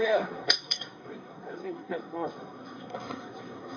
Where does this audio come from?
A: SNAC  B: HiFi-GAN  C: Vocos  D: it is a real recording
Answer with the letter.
A